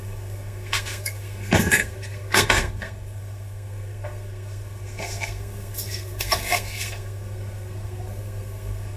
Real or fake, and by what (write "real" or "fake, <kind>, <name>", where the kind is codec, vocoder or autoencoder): fake, codec, SNAC